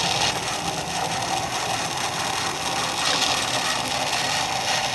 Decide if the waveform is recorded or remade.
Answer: recorded